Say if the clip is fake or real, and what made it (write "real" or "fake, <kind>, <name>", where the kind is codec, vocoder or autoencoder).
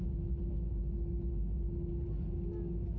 real